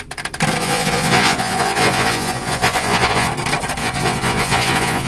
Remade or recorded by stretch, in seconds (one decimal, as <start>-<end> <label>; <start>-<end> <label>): 0.0-0.6 recorded; 0.6-3.3 remade; 3.3-3.8 recorded; 3.8-5.1 remade